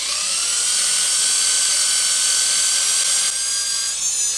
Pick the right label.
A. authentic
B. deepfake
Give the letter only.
A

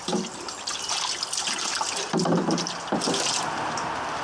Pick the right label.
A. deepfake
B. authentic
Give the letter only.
B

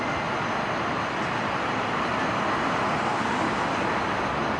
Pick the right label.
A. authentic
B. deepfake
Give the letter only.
A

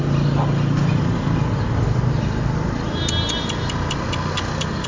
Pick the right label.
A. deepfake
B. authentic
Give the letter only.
B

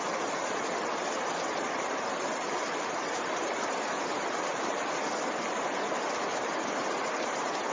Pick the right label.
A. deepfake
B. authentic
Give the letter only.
B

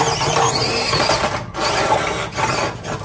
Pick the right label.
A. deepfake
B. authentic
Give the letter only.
B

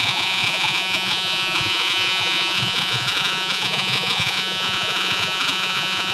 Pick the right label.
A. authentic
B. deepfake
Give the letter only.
B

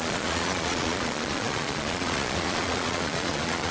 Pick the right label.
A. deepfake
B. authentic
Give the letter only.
A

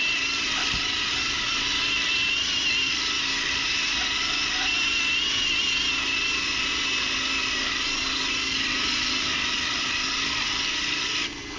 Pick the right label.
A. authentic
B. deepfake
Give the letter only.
A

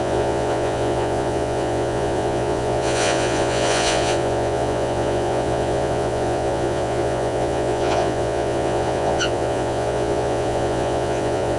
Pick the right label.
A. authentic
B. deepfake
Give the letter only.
B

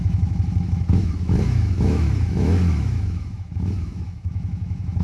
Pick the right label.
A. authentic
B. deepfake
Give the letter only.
B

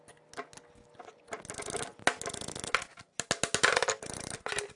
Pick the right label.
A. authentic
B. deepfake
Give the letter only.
A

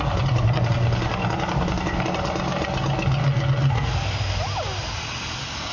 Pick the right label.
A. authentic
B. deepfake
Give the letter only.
A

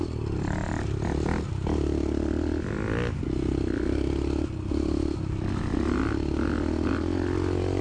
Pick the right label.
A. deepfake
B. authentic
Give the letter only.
B